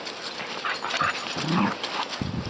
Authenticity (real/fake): real